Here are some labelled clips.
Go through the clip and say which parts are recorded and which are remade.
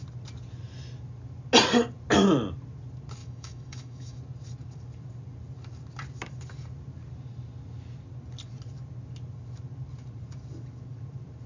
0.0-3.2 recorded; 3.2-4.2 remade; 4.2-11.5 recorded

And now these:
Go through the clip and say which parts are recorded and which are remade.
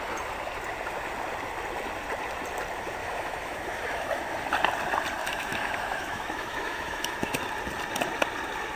0.0-3.0 recorded; 3.0-4.2 remade; 4.2-5.2 recorded; 5.2-7.4 remade; 7.4-8.8 recorded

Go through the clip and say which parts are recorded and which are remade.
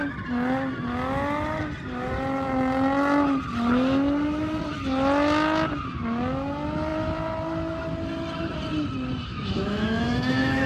0.0-9.3 recorded; 9.3-10.7 remade